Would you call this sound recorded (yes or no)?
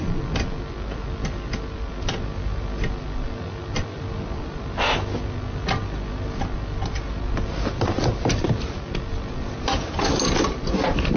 yes